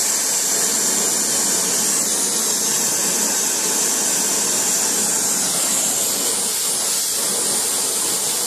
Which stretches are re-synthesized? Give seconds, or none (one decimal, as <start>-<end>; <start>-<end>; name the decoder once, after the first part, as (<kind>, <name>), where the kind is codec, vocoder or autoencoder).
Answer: none